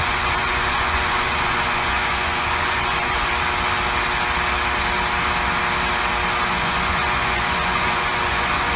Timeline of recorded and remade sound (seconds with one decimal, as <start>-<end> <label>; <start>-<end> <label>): 0.0-3.3 remade; 3.3-6.5 recorded; 6.5-8.8 remade

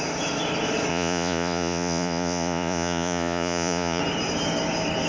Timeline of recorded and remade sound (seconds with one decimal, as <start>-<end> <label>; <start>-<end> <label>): 0.0-0.9 recorded; 0.9-4.0 remade; 4.0-5.1 recorded

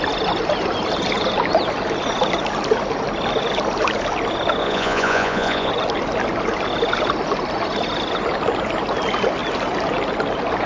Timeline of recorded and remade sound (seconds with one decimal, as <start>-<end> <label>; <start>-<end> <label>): 0.0-4.6 recorded; 4.6-5.7 remade; 5.7-10.7 recorded